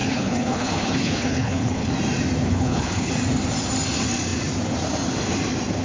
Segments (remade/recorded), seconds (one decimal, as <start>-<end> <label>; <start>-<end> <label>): 0.0-1.9 remade; 1.9-2.5 recorded; 2.5-3.1 remade; 3.1-5.8 recorded